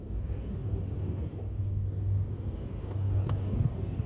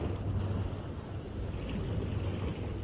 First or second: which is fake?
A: first